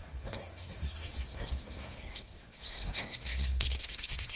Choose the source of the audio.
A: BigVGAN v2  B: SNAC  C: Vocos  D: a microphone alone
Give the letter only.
B